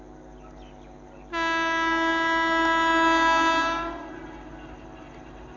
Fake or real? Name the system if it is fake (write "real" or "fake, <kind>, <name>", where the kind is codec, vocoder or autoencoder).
real